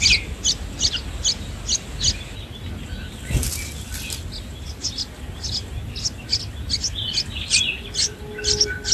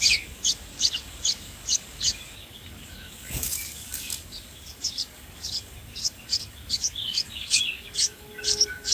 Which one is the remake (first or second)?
second